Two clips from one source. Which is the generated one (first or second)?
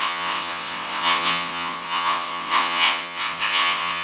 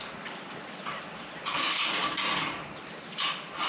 first